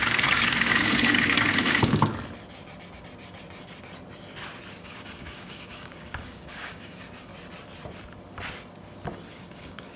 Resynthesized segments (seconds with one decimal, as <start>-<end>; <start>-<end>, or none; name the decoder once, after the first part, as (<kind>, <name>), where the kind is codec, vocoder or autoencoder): 0.0-2.1 (codec, DAC); 4.7-7.3; 9.3-10.0